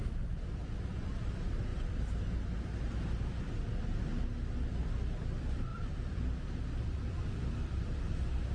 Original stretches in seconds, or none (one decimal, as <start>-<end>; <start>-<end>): 0.0-5.7; 6.7-8.5